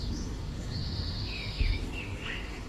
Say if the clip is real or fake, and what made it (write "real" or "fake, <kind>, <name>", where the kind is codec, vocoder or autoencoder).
fake, autoencoder, DAC-VAE